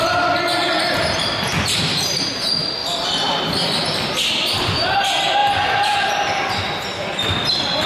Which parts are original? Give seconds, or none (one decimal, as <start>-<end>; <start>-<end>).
0.0-5.4; 6.1-7.9